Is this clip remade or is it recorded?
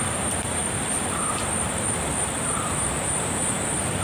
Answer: remade